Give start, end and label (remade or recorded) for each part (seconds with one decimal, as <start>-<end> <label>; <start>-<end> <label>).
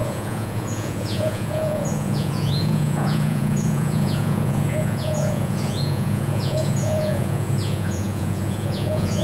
0.0-9.2 remade